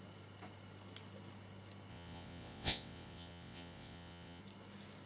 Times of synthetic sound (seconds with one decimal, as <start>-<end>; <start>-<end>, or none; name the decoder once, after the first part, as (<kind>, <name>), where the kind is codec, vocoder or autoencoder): 1.9-4.4 (vocoder, WaveNeXt)

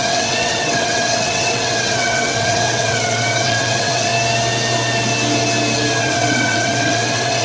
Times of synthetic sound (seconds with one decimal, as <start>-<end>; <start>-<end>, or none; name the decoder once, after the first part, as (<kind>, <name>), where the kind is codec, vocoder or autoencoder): 0.0-4.1 (vocoder, WaveNeXt); 6.0-7.4

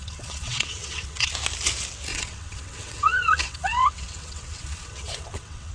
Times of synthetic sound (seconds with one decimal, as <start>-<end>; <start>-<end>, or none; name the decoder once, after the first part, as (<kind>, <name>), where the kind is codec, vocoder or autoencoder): 0.0-1.3 (vocoder, WaveNeXt); 2.1-5.7

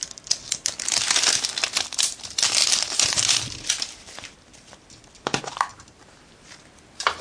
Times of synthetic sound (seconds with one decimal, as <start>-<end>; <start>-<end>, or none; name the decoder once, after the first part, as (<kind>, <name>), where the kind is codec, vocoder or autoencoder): none

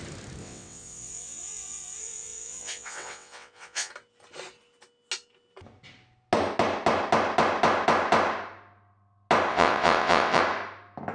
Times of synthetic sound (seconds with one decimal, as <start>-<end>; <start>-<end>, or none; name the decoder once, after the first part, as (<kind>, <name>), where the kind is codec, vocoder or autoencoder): 0.4-3.9 (vocoder, WaveNeXt); 9.5-10.4

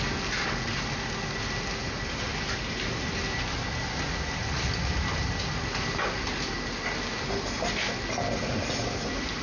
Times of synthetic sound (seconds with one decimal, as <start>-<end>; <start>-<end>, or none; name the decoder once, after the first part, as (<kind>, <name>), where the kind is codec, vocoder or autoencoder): none

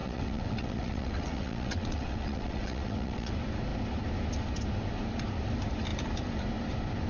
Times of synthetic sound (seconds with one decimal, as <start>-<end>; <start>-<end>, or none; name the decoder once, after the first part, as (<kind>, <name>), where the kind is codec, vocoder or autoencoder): 0.0-3.3 (vocoder, WaveNeXt)

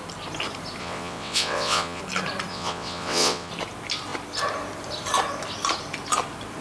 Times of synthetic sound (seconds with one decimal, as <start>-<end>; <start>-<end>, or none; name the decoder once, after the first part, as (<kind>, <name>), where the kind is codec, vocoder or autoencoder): 0.8-2.0 (vocoder, WaveNeXt); 2.5-3.5